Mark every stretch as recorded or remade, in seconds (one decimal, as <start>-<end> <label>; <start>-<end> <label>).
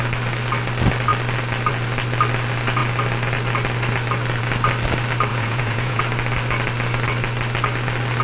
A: 0.0-5.3 recorded; 5.3-6.0 remade; 6.0-8.2 recorded